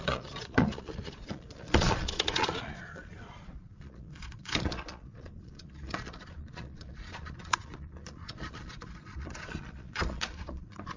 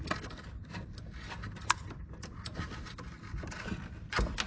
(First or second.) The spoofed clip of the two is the first